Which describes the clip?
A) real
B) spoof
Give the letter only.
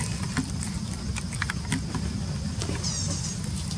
A